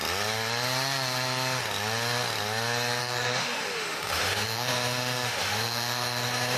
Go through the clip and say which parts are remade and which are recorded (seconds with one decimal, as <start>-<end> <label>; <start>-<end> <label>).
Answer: 0.0-3.0 recorded; 3.0-6.6 remade